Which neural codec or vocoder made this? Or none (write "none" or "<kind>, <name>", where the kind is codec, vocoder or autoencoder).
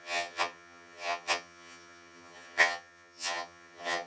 vocoder, HiFi-GAN